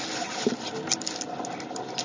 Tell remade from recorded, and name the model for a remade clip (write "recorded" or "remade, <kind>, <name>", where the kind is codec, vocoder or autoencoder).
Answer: recorded